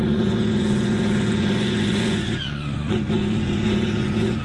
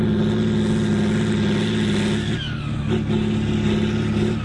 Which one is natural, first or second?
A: second